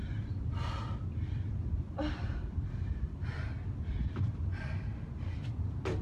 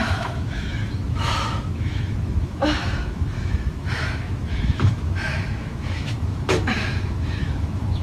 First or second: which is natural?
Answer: first